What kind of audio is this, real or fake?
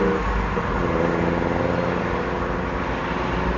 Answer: real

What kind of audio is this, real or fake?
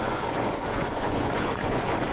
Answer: fake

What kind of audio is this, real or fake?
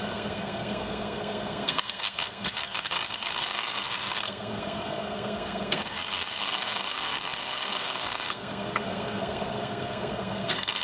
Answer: fake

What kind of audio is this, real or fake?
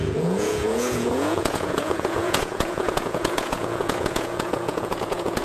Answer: fake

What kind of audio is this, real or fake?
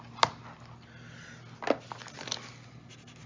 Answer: real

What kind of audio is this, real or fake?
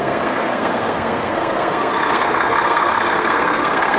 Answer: fake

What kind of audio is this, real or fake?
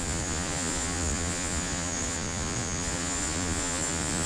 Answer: fake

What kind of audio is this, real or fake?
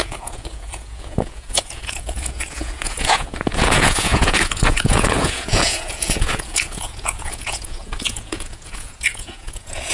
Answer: fake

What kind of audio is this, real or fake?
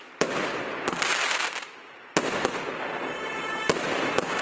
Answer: real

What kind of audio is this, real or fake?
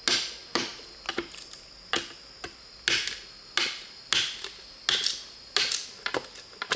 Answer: real